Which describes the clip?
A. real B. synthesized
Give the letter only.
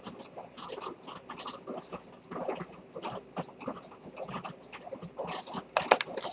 A